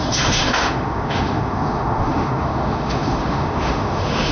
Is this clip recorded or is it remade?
remade